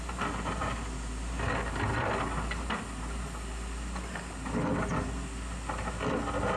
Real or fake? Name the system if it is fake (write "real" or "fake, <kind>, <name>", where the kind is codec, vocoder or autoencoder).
real